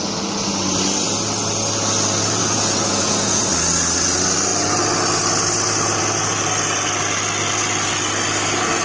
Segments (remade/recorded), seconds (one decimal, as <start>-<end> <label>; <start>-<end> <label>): 0.0-2.4 recorded; 2.4-3.4 remade; 3.4-8.8 recorded